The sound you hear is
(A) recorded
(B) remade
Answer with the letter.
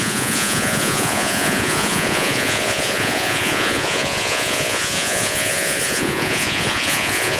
B